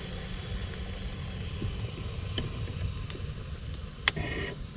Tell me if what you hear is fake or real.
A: real